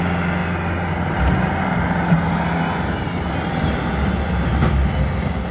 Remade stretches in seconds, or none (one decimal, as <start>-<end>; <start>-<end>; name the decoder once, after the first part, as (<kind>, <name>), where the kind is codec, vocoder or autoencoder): none